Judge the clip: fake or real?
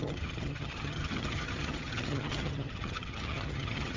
fake